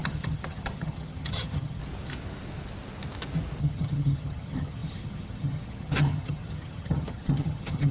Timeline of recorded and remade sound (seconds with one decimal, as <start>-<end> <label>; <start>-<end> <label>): 0.0-1.8 remade; 1.8-3.6 recorded; 3.6-7.9 remade

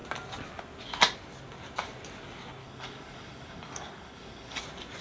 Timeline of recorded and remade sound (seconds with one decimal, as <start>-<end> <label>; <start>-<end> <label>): 0.0-2.6 recorded; 2.6-4.6 remade; 4.6-5.0 recorded

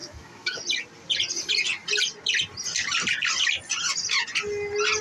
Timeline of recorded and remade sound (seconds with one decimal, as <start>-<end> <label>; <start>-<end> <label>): 0.0-0.6 remade; 0.6-5.0 recorded

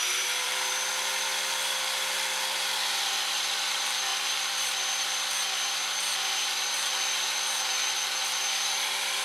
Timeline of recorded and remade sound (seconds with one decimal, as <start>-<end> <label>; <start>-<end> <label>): 0.0-9.2 remade

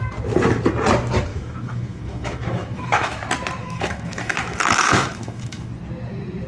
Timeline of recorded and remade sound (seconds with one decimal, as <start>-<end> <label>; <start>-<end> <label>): 0.0-1.3 recorded; 1.3-3.2 remade; 3.2-3.6 recorded; 3.6-5.7 remade; 5.7-6.5 recorded